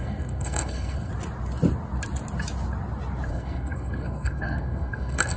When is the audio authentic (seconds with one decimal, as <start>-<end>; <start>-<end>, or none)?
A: 1.1-3.3